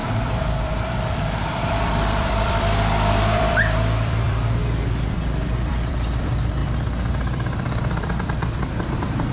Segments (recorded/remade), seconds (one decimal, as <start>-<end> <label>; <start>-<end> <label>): 0.0-4.6 remade; 4.6-5.1 recorded; 5.1-9.3 remade